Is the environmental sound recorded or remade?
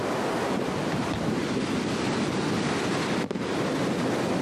recorded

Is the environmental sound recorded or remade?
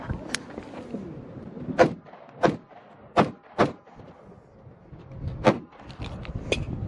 recorded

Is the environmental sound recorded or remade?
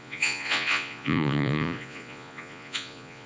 remade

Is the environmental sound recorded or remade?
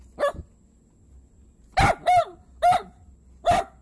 recorded